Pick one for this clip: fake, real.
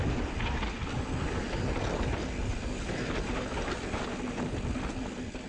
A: real